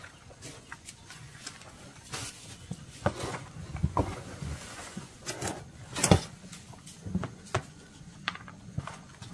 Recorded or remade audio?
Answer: remade